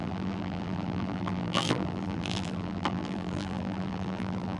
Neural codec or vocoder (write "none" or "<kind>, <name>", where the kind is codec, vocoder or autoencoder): vocoder, BigVGAN v2